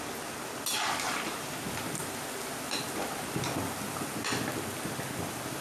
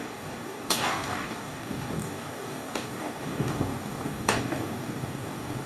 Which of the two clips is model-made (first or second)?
second